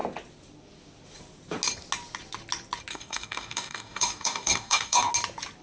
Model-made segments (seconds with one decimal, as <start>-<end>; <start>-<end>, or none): 2.9-5.1